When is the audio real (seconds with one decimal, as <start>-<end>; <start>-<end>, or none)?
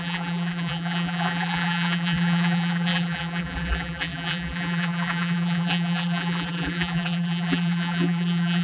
none